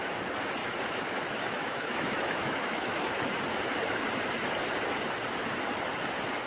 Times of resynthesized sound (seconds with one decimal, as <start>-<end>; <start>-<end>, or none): 0.6-3.4